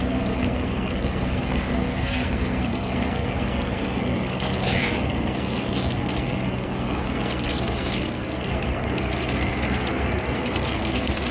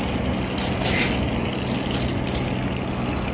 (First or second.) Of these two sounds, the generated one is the first